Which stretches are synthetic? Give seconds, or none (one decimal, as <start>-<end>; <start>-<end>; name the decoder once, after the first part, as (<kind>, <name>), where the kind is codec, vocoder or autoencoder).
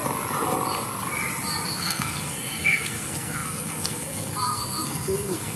1.8-5.6 (codec, SNAC)